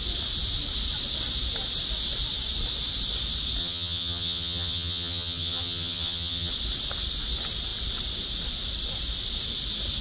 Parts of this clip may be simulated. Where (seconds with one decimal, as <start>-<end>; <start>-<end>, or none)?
3.6-6.5